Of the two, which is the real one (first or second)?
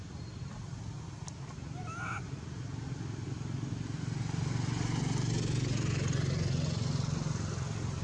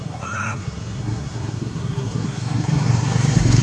first